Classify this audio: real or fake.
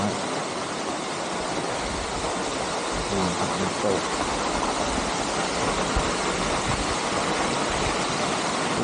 real